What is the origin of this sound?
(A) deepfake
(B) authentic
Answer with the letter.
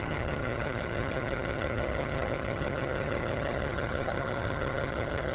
A